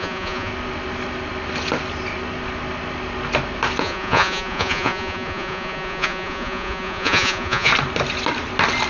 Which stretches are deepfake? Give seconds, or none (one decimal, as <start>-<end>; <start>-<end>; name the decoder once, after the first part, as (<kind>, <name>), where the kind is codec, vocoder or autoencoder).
0.0-0.5 (vocoder, Vocos); 3.8-7.7